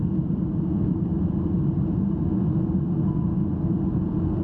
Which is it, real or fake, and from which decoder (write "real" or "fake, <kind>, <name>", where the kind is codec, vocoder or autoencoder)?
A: real